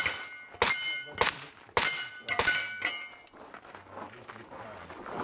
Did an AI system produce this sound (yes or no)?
no